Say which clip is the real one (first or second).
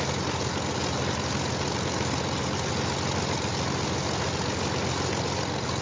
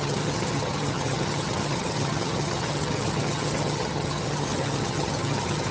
first